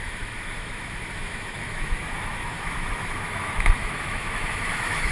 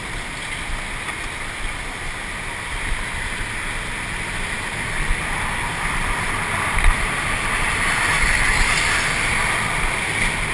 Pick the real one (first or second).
second